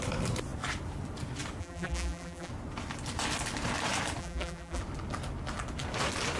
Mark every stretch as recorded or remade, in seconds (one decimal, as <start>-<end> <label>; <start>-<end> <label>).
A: 0.0-1.6 recorded; 1.6-2.5 remade; 2.5-4.2 recorded; 4.2-4.8 remade; 4.8-6.4 recorded